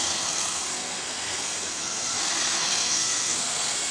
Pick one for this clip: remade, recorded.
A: remade